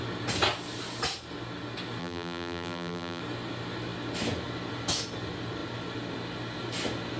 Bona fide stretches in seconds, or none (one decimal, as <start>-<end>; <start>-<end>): 0.0-2.0; 3.2-7.2

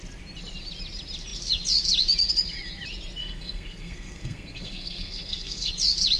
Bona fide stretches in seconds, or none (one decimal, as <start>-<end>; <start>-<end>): 0.0-3.2; 5.7-6.2

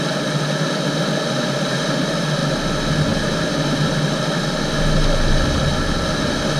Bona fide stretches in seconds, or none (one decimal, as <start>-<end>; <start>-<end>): 0.0-6.6

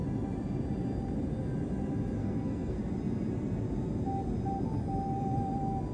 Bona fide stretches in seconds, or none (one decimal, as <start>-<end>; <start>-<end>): 0.0-2.2; 2.8-5.9

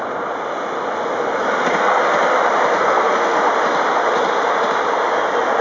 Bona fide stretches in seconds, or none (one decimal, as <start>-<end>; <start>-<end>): 0.0-2.8; 3.4-5.6

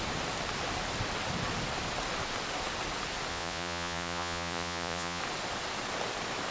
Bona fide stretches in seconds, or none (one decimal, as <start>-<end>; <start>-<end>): 0.0-3.3; 5.2-6.5

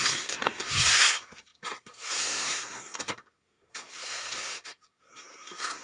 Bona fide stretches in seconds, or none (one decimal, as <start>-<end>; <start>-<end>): none